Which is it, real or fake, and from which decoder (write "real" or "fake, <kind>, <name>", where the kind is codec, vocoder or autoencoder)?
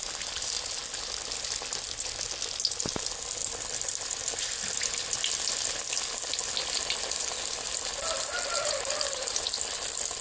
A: real